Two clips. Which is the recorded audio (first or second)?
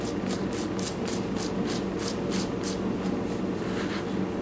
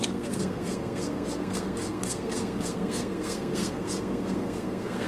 first